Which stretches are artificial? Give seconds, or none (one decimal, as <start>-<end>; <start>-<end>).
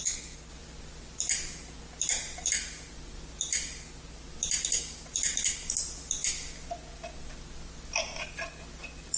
none